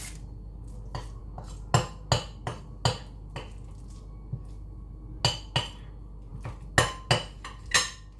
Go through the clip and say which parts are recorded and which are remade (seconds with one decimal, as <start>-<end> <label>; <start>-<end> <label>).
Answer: 0.0-8.2 recorded

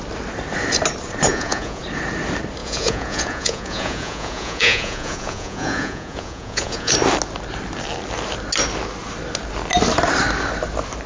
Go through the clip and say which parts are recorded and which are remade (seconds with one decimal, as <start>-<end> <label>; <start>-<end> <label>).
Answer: 0.0-1.3 recorded; 1.3-1.8 remade; 1.8-2.6 recorded; 2.6-6.9 remade; 6.9-11.1 recorded